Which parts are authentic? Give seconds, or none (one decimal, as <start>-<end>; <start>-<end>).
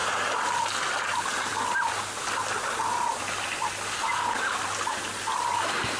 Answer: 0.0-1.0; 1.5-5.1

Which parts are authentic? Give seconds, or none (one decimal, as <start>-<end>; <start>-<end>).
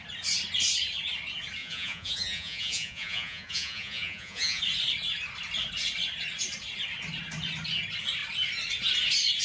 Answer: 0.0-1.6; 4.6-9.4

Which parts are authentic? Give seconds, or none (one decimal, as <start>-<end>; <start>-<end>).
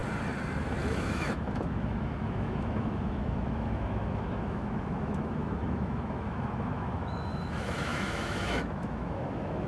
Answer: 0.0-0.8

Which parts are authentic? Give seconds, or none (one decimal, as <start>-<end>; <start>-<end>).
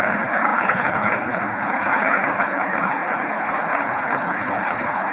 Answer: none